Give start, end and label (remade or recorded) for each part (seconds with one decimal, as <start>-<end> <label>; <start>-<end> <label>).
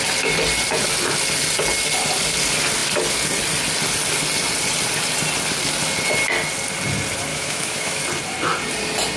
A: 0.0-7.3 recorded; 7.3-8.0 remade; 8.0-9.2 recorded